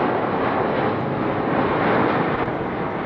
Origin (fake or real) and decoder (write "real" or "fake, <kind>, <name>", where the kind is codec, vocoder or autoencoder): real